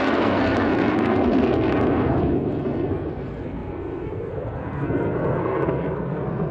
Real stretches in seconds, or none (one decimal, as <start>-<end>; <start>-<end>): none